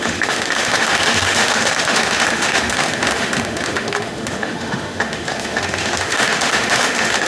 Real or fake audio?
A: fake